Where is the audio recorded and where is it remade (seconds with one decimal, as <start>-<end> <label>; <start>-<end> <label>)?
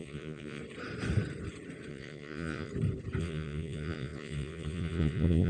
0.0-0.6 remade; 0.6-1.9 recorded; 1.9-2.7 remade; 2.7-3.2 recorded; 3.2-5.5 remade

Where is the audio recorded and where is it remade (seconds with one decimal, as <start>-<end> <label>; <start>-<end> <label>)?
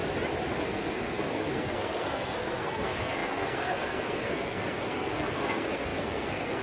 0.0-0.5 recorded; 0.5-6.6 remade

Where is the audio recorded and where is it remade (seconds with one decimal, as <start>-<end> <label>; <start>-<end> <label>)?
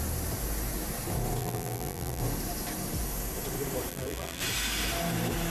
0.0-1.4 recorded; 1.4-2.2 remade; 2.2-3.9 recorded; 3.9-4.4 remade; 4.4-5.5 recorded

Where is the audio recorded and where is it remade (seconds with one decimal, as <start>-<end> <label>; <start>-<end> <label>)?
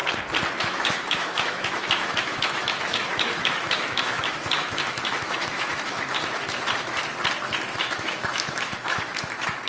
0.0-0.6 recorded; 0.6-7.0 remade; 7.0-7.8 recorded; 7.8-9.7 remade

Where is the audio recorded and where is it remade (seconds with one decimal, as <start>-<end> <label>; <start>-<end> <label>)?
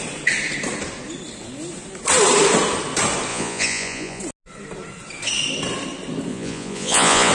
0.0-3.3 recorded; 3.3-4.2 remade; 4.2-6.3 recorded; 6.3-7.3 remade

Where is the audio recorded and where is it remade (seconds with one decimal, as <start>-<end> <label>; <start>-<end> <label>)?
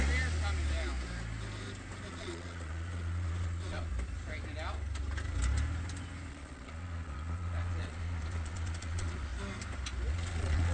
0.0-2.1 recorded; 2.1-3.9 remade; 3.9-6.3 recorded; 6.3-9.3 remade; 9.3-10.1 recorded; 10.1-10.7 remade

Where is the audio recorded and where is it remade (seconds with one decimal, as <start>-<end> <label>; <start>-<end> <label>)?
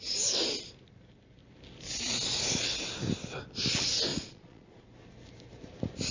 0.0-4.1 recorded; 4.1-4.9 remade; 4.9-6.1 recorded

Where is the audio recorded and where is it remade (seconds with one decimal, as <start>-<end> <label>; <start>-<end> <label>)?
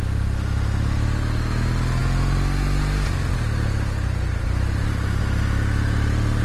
0.0-6.4 recorded